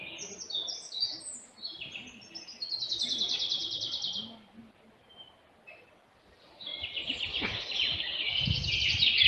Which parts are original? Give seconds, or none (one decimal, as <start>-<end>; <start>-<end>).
0.0-9.3